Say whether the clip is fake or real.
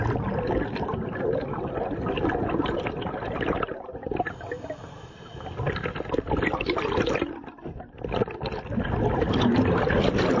real